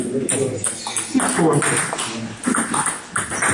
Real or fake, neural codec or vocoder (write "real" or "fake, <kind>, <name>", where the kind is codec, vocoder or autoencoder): real